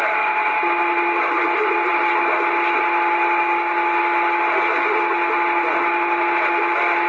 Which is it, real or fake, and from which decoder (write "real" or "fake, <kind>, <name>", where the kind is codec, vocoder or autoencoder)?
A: real